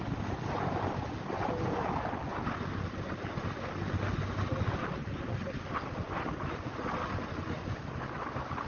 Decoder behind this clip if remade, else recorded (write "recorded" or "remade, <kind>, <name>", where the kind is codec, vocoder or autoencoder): recorded